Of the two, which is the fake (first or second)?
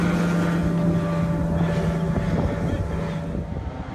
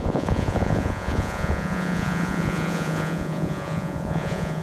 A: second